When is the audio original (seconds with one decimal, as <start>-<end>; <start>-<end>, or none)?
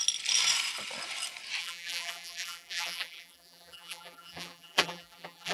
0.0-1.6